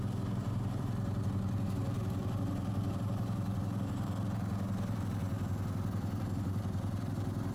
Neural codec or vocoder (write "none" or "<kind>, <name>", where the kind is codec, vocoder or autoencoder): vocoder, BigVGAN v2